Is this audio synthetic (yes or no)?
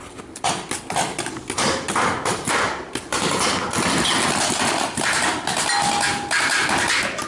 no